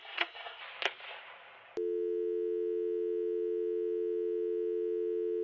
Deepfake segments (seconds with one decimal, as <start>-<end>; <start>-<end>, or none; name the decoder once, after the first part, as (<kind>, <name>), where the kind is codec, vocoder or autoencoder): 0.0-0.6 (codec, SNAC)